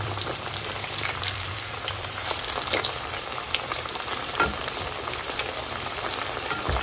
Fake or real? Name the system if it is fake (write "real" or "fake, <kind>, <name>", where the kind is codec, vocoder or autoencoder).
fake, vocoder, BigVGAN v2